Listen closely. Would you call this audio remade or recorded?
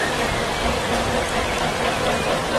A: recorded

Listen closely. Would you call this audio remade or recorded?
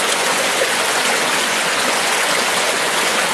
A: remade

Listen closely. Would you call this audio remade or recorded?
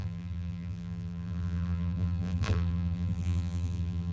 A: remade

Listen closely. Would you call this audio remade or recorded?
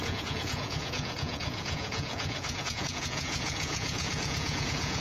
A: remade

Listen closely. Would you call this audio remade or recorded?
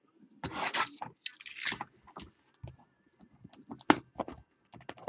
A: recorded